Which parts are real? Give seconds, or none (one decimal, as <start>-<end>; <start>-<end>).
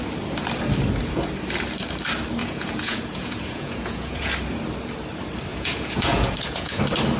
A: 0.0-2.4; 4.3-5.5; 6.8-7.2